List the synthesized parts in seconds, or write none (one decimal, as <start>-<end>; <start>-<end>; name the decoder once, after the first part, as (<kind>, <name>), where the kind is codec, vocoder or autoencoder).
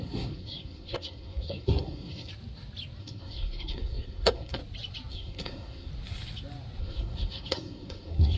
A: 0.0-2.3 (codec, SNAC); 3.0-4.6; 5.1-5.9; 6.8-8.4